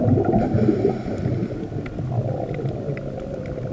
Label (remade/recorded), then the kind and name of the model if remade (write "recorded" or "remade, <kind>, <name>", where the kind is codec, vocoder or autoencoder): remade, vocoder, BigVGAN v2